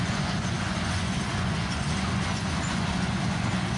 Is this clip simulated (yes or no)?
yes